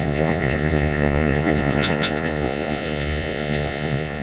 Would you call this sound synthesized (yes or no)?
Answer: yes